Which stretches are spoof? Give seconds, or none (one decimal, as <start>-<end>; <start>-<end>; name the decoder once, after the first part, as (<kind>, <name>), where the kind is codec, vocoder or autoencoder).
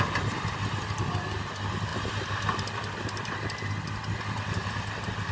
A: none